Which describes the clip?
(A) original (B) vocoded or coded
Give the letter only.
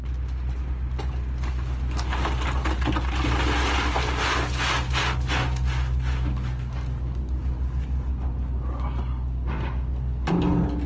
A